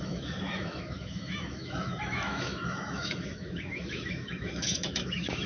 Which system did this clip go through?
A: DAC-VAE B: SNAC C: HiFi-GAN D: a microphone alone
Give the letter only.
A